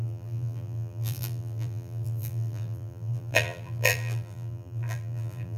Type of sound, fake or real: fake